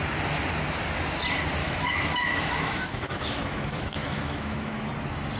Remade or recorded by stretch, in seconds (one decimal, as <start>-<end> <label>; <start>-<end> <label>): 0.0-1.6 recorded; 1.6-4.8 remade; 4.8-5.4 recorded